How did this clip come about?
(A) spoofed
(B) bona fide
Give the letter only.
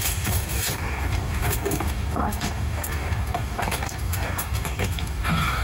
A